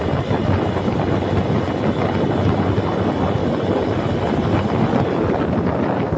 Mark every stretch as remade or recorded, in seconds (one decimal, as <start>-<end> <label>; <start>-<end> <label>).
0.0-6.2 recorded